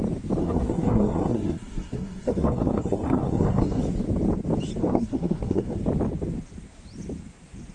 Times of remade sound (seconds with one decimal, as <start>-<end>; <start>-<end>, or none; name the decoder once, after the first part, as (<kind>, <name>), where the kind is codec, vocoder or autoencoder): 0.4-3.8 (codec, SNAC); 4.8-5.8